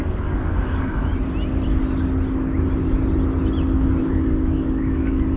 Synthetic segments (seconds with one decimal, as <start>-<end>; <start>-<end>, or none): 0.0-1.1; 4.0-5.4